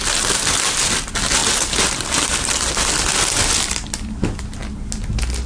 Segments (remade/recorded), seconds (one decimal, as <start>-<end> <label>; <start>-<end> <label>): 0.0-5.5 recorded